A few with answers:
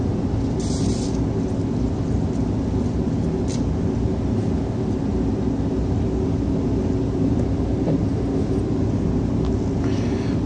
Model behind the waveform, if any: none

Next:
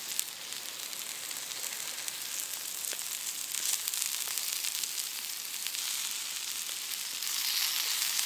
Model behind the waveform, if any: none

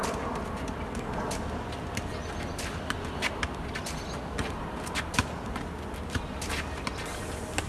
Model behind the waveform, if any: none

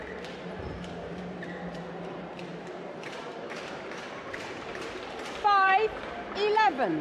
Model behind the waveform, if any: vocoder, BigVGAN v2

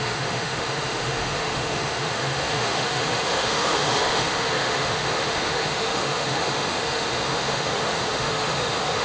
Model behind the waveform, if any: autoencoder, DAC-VAE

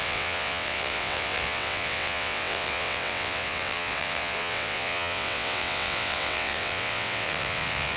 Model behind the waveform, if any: vocoder, WaveNeXt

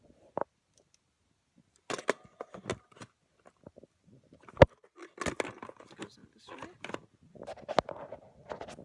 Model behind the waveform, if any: none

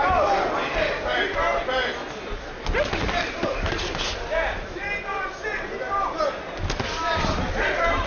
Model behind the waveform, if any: none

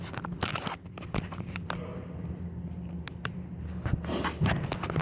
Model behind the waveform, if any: none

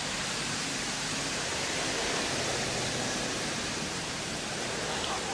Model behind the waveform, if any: vocoder, BigVGAN v2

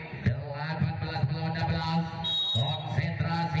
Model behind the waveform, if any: none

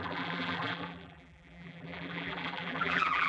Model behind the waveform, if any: vocoder, BigVGAN v2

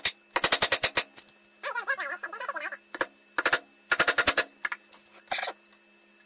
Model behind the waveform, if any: none